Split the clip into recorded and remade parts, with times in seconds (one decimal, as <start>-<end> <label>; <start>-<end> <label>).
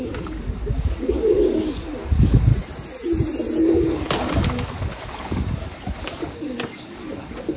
0.0-2.5 remade; 2.5-3.6 recorded; 3.6-7.6 remade